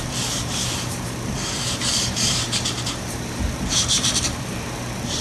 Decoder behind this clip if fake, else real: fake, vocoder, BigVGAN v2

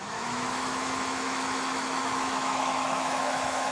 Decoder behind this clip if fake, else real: fake, autoencoder, DAC-VAE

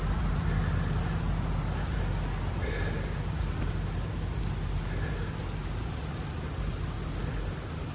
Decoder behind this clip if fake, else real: real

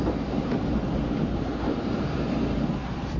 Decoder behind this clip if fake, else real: fake, vocoder, BigVGAN v2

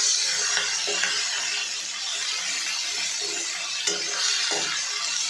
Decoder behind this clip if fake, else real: real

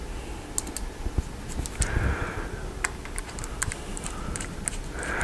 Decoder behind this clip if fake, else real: real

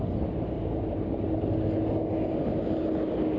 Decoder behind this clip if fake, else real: real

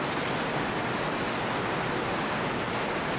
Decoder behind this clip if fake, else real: real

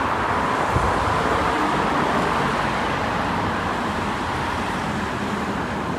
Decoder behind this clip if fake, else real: real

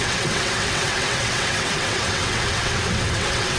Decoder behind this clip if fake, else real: fake, vocoder, WaveNeXt